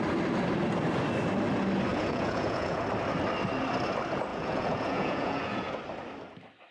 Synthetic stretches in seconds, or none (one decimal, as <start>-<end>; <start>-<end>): 1.9-2.8; 4.3-5.7